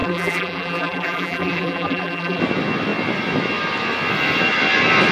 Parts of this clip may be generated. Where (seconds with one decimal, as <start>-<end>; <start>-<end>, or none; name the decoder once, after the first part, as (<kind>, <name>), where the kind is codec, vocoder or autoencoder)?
0.0-2.4 (vocoder, BigVGAN v2)